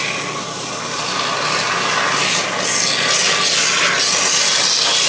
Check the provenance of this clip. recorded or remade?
recorded